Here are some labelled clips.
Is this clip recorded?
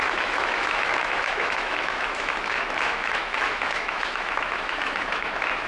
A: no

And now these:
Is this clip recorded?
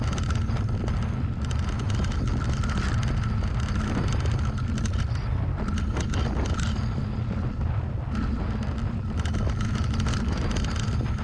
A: yes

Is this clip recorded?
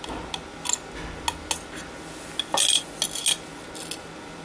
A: yes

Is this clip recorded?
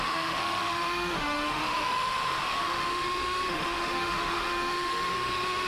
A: no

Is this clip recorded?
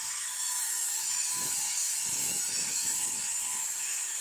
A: no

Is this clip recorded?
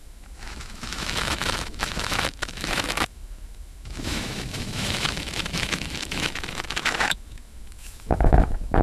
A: no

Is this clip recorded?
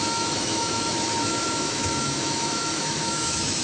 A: no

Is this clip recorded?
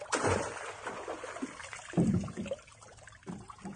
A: yes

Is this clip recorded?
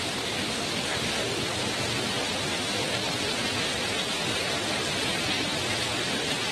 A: yes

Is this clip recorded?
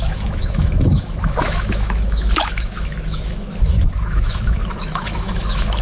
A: no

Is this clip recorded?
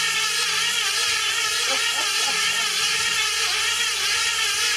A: yes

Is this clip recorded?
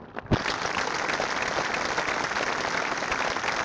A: yes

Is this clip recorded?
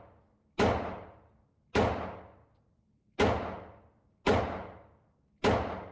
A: yes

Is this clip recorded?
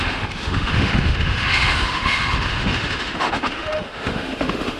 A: no